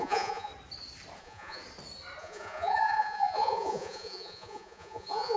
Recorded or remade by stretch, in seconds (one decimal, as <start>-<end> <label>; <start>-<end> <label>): 0.0-0.5 remade; 0.5-1.2 recorded; 1.2-1.6 remade; 1.6-2.2 recorded; 2.2-5.4 remade